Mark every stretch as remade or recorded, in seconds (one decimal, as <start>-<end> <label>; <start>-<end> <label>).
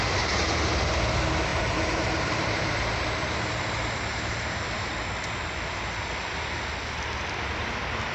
0.0-1.5 recorded; 1.5-3.6 remade; 3.6-4.1 recorded; 4.1-4.9 remade; 4.9-8.1 recorded